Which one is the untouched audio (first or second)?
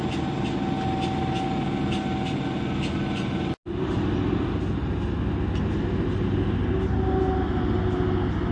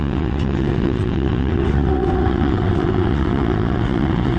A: first